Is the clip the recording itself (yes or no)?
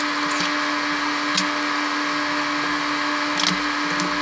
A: yes